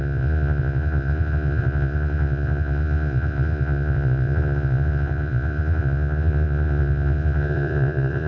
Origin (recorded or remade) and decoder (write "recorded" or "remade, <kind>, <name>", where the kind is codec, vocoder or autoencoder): remade, vocoder, Vocos